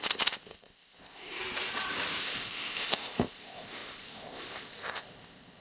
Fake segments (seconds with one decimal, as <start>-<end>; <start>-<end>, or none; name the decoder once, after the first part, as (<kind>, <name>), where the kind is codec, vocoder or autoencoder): 0.0-1.4 (codec, ZipCodec); 2.2-5.6